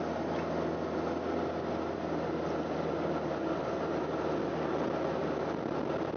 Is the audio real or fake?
real